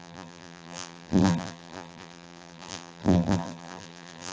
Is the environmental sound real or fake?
fake